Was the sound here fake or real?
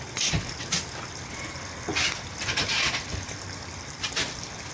real